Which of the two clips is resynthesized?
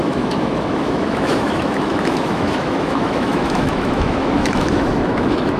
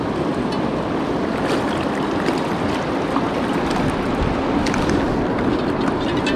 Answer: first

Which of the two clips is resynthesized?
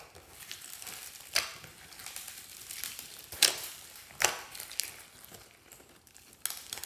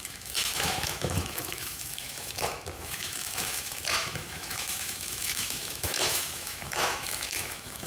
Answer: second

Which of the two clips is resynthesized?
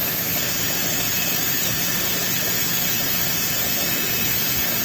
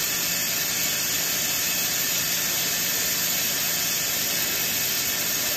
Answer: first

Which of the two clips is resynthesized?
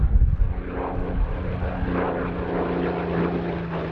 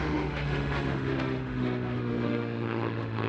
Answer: second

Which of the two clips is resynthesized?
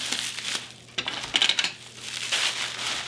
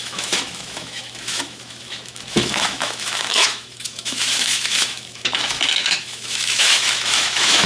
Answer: second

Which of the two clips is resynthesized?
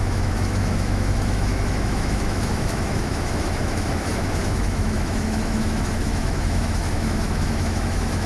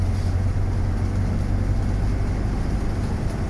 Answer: first